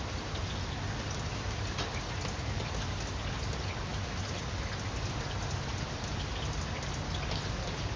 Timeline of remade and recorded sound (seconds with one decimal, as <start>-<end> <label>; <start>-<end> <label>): 0.0-8.0 recorded